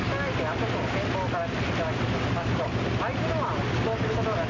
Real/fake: real